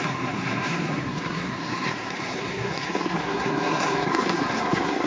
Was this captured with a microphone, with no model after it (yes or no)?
no